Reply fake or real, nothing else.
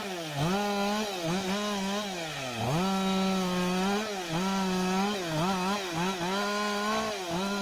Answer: real